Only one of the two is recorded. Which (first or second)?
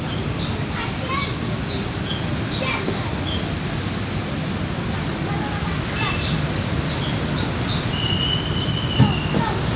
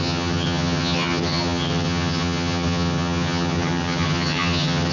first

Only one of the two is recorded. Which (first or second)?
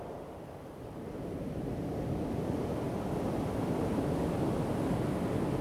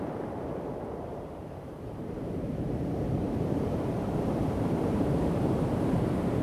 first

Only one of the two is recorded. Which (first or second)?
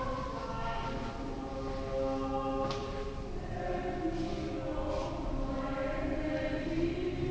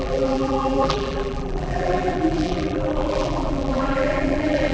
first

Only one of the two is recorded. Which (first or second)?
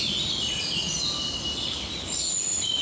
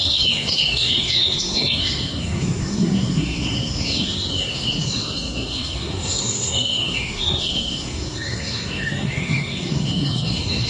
first